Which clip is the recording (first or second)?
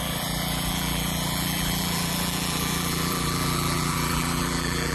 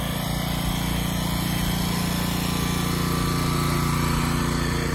second